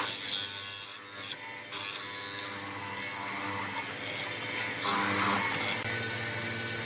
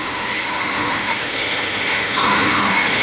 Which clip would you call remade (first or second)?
second